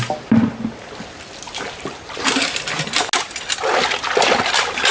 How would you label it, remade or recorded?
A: recorded